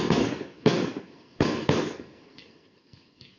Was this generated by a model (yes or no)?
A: yes